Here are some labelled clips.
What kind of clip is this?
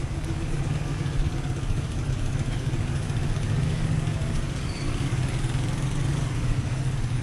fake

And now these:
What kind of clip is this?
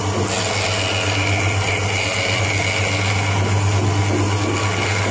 real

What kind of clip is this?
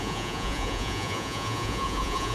fake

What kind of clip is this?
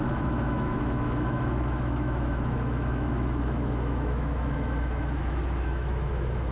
fake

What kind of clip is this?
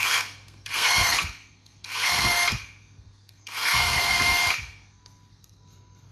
fake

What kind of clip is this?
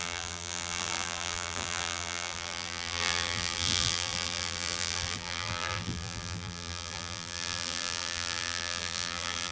fake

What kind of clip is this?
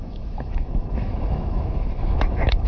fake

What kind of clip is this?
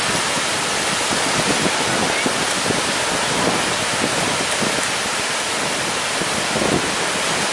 real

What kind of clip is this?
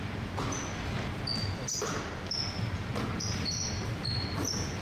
real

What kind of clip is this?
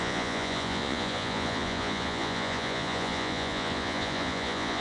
fake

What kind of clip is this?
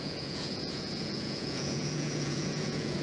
fake